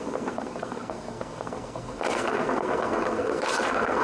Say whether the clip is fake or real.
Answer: fake